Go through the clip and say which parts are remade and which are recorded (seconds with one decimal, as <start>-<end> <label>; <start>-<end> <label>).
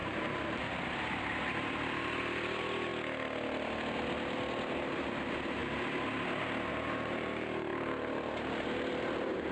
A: 0.0-2.9 remade; 2.9-5.1 recorded; 5.1-5.6 remade; 5.6-6.7 recorded; 6.7-9.5 remade